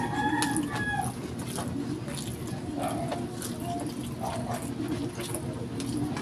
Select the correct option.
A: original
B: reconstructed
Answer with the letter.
A